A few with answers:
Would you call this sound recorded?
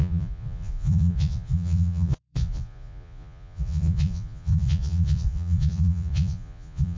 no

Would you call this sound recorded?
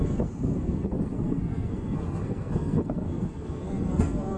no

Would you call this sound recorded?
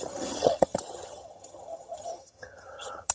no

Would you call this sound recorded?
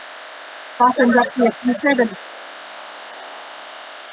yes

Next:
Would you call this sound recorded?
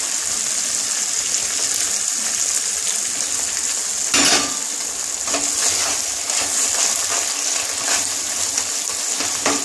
yes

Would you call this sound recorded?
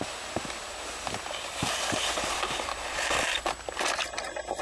yes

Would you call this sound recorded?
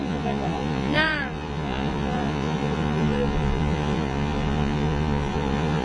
no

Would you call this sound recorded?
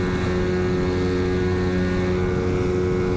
yes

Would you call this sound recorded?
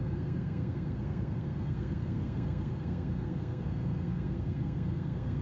no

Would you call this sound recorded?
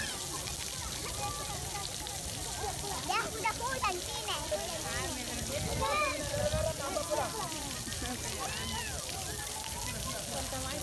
yes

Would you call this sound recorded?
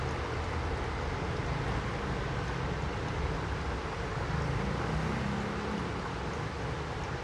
yes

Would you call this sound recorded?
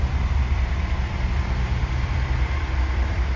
no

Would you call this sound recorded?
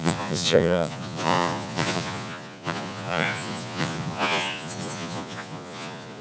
no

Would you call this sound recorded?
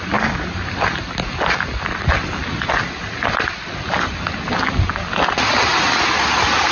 yes